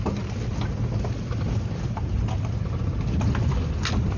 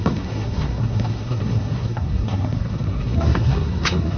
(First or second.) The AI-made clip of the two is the second